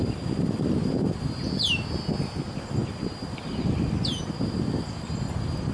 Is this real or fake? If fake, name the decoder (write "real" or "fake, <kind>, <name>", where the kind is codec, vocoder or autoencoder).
real